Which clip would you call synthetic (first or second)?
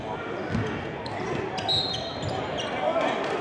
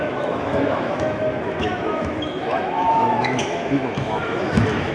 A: second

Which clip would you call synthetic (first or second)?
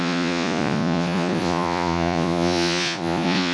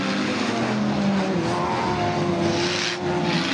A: first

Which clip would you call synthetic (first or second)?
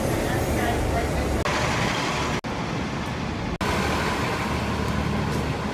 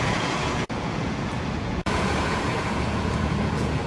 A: second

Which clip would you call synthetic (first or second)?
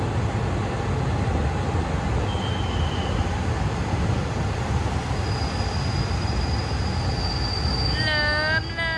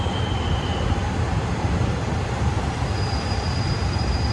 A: second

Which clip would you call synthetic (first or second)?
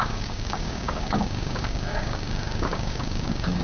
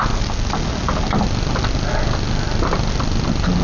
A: first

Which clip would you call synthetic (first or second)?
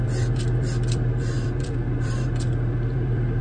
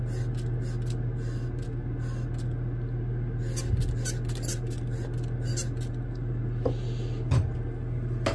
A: first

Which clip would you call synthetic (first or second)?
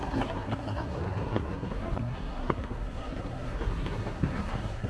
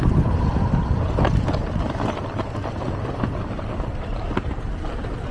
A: first